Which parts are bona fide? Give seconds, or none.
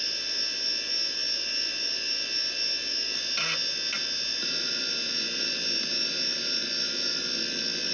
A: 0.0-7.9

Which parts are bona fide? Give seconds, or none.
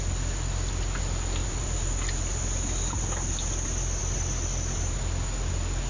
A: 0.0-1.4; 2.4-5.9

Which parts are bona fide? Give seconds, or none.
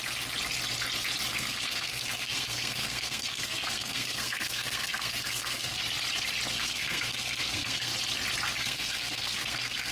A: 0.0-1.3; 5.8-6.5; 7.9-8.6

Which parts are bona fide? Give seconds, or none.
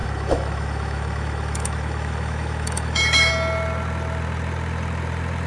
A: 3.3-5.5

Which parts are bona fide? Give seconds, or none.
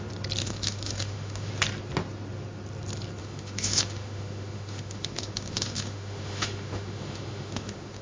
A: 0.0-0.4; 1.5-3.2